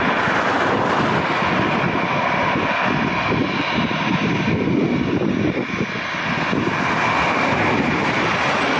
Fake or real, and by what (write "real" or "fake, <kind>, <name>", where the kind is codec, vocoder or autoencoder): real